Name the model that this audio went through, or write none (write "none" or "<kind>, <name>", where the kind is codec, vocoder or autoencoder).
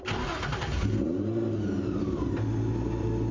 none